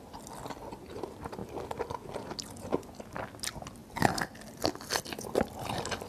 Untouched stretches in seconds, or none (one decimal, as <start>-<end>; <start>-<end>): 0.0-6.1